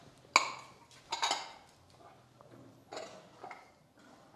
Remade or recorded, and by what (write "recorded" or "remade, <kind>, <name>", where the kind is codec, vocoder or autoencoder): recorded